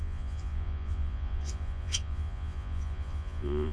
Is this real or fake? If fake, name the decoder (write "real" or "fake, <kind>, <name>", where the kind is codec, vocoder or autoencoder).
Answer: fake, vocoder, Vocos